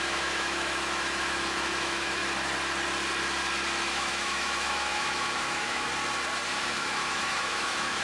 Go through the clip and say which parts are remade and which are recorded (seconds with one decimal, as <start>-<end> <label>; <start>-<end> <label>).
0.0-2.2 remade; 2.2-3.9 recorded; 3.9-5.9 remade; 5.9-6.5 recorded; 6.5-8.0 remade